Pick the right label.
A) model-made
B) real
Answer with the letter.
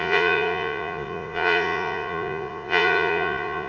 A